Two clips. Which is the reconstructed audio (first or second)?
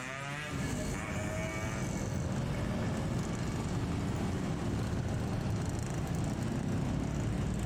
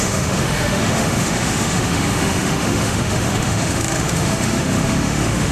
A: second